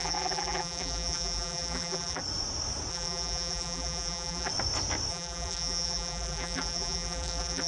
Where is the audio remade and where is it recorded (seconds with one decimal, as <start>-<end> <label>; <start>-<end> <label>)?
0.0-2.2 remade; 2.2-2.9 recorded; 2.9-4.5 remade; 4.5-5.1 recorded; 5.1-7.7 remade